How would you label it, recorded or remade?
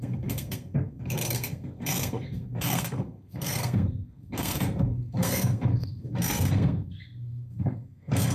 remade